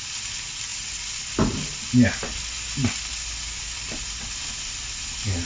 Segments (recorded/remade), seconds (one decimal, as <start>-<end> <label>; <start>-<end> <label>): 0.0-5.5 recorded